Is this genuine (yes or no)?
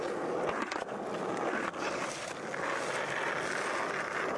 yes